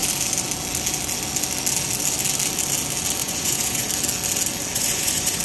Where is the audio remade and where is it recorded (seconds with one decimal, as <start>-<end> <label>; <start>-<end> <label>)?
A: 0.0-3.2 recorded; 3.2-3.9 remade; 3.9-4.7 recorded; 4.7-5.4 remade